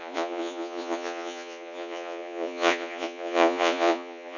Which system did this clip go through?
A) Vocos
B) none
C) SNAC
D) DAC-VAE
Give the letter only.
A